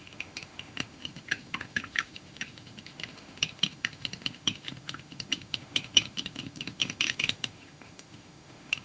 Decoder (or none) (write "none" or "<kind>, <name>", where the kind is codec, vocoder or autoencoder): autoencoder, DAC-VAE